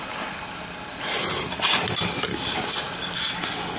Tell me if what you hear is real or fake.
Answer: real